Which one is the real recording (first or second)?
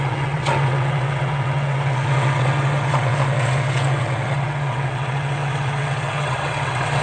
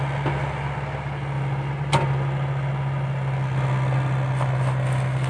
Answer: second